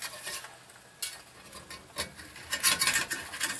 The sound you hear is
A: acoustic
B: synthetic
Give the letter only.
A